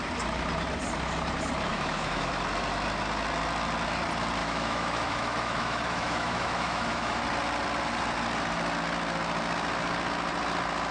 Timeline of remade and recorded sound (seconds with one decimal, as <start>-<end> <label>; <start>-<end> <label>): 0.0-1.7 recorded; 1.7-2.3 remade; 2.3-4.4 recorded; 4.4-7.2 remade; 7.2-10.9 recorded